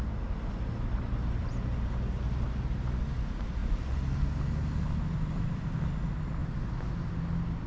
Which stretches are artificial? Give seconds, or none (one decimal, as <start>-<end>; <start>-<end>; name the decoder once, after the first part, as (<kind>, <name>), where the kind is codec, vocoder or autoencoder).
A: none